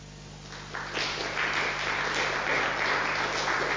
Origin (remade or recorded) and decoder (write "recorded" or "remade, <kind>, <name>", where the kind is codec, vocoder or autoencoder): recorded